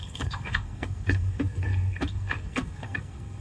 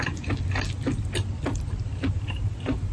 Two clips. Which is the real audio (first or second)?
second